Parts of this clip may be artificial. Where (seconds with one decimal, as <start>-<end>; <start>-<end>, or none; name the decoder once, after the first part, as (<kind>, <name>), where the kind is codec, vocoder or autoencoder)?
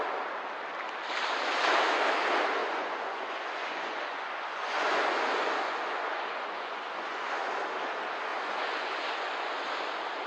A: 2.6-7.5 (vocoder, Vocos); 8.3-9.5